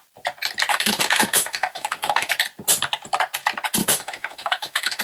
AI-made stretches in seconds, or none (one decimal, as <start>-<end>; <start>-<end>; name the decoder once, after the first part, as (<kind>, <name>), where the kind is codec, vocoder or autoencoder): 0.7-2.3 (autoencoder, DAC-VAE); 3.8-5.0

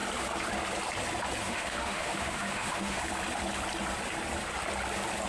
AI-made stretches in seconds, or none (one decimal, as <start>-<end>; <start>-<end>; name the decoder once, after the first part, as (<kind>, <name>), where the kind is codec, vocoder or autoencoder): 1.4-3.0 (autoencoder, DAC-VAE)

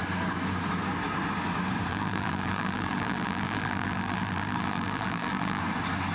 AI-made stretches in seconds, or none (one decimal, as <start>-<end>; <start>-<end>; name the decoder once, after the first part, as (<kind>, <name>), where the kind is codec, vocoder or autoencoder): 1.9-5.6 (vocoder, BigVGAN v2)

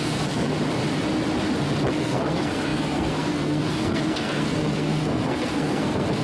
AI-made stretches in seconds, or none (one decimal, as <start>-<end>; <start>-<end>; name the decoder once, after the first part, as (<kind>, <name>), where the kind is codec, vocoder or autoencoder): 0.0-0.5 (codec, SNAC); 1.9-6.2

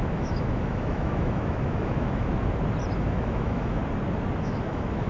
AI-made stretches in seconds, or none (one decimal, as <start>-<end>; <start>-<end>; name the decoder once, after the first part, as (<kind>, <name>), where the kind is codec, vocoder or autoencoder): 0.0-2.3 (autoencoder, DAC-VAE); 3.0-3.8; 4.4-5.1

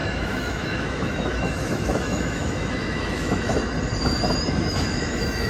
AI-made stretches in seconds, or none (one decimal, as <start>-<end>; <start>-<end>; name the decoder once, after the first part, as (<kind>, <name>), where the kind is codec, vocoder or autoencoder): 0.0-3.6 (autoencoder, DAC-VAE); 4.5-5.5

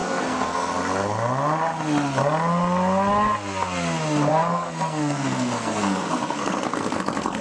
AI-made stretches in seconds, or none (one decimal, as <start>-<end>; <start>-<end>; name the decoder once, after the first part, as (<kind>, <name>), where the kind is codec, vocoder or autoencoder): 0.0-0.7 (codec, SNAC); 4.3-7.4